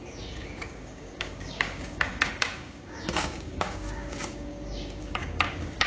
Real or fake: fake